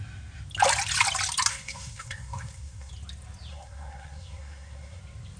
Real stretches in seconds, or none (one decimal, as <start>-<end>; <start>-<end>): 0.0-1.5; 2.9-3.5; 5.0-5.4